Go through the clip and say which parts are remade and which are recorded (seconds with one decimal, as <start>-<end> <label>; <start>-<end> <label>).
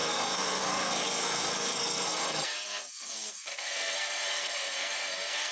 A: 0.0-5.5 remade